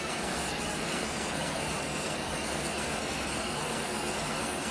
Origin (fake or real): fake